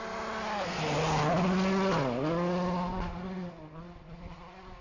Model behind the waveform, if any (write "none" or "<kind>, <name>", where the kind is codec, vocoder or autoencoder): none